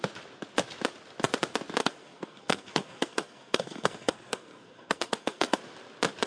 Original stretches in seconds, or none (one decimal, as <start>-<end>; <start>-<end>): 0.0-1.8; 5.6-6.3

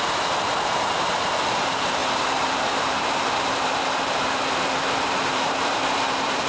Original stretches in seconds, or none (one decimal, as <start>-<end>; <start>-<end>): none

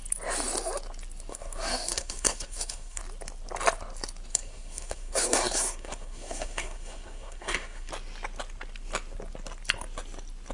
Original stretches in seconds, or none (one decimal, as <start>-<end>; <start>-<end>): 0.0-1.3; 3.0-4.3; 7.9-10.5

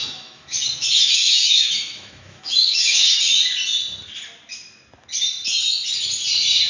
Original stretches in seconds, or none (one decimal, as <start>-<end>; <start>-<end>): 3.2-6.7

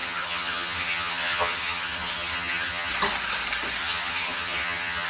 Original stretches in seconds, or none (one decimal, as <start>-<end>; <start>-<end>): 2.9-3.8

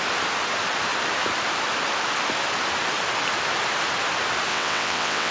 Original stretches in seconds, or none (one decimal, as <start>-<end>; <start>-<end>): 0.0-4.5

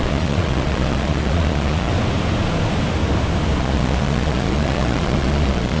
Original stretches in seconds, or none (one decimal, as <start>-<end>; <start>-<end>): 1.9-3.6